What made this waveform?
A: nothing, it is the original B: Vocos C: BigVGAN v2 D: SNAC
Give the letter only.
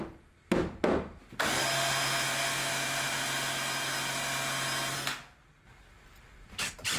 A